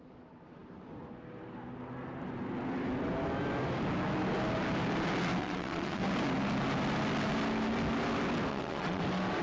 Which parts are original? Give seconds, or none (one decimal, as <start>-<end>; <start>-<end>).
0.0-5.4; 6.0-8.5; 9.0-9.4